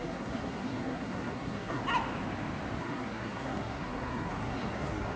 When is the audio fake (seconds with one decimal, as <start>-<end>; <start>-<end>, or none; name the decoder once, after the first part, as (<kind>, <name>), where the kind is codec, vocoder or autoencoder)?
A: 0.0-1.8 (codec, SNAC); 2.8-5.2